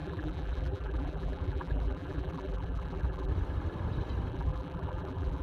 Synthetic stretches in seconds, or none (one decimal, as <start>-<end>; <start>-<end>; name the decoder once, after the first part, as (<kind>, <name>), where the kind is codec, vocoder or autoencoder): 0.0-3.3 (vocoder, BigVGAN v2); 4.3-5.4